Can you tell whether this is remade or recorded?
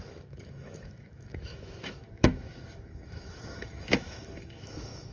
remade